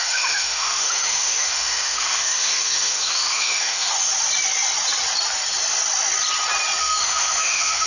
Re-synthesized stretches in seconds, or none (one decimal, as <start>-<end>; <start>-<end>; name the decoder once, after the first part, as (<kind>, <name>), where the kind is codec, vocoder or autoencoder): 0.0-3.9 (autoencoder, DAC-VAE); 6.8-7.9